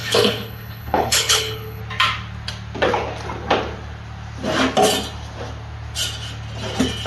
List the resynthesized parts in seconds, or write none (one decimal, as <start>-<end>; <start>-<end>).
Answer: 0.0-1.8